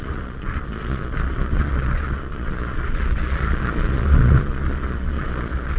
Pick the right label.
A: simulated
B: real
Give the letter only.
A